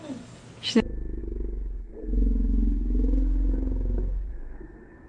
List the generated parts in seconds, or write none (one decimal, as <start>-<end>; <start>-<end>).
0.0-0.4; 1.2-5.1